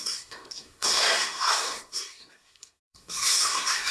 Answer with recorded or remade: remade